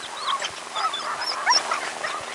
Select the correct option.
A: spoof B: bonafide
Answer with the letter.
B